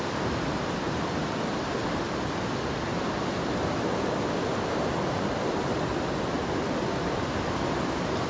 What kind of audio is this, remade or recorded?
recorded